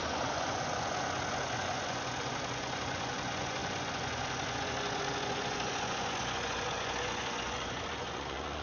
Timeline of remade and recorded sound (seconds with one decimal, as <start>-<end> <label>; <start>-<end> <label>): 0.0-8.6 remade

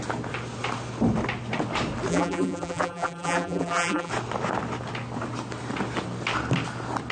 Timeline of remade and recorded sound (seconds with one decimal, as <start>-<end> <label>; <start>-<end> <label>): 0.0-2.1 recorded; 2.1-4.1 remade; 4.1-7.1 recorded

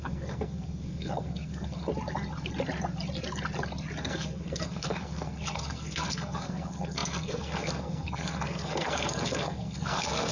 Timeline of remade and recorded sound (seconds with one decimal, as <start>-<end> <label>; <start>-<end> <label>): 0.0-1.9 remade; 1.9-4.0 recorded; 4.0-10.3 remade

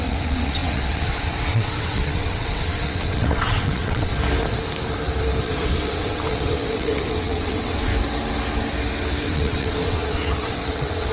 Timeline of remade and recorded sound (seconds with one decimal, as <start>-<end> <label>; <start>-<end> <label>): 0.0-4.1 remade; 4.1-5.4 recorded; 5.4-7.9 remade; 7.9-9.2 recorded; 9.2-11.1 remade